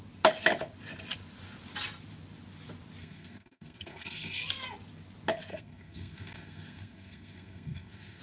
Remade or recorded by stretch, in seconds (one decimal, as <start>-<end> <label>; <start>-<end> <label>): 0.0-3.0 recorded; 3.0-4.4 remade; 4.4-5.5 recorded; 5.5-8.2 remade